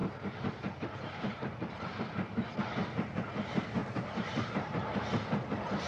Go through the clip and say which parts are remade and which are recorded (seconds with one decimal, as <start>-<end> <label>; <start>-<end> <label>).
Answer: 0.0-2.0 remade; 2.0-3.8 recorded; 3.8-5.1 remade; 5.1-5.9 recorded